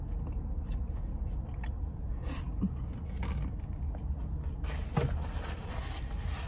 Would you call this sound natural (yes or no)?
yes